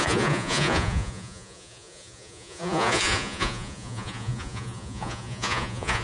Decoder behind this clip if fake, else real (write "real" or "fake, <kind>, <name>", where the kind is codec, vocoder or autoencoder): fake, vocoder, Vocos